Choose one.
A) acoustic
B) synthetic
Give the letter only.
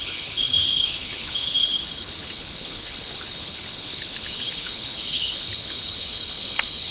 B